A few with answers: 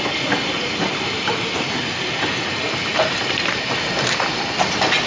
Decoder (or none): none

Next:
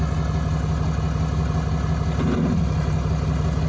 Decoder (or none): none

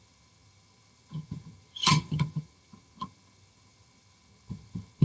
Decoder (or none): vocoder, HiFi-GAN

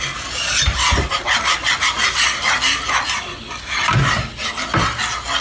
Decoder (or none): none